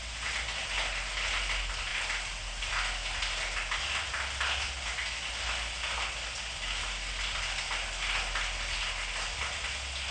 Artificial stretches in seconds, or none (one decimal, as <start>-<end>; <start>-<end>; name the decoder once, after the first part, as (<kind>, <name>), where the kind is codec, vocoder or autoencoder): none